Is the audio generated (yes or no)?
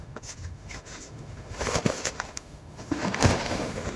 yes